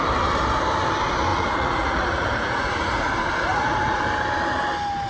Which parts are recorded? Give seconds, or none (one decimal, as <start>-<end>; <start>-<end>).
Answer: 0.0-1.3; 3.1-3.5; 4.0-5.1